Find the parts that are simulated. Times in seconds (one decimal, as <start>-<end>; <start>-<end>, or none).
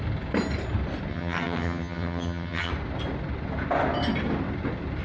1.1-2.7